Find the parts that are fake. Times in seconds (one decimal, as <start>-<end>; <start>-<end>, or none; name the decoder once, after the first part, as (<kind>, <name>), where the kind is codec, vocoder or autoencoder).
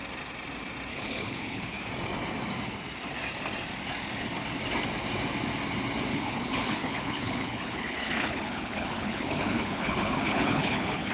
0.9-1.8 (codec, HILCodec); 6.1-11.1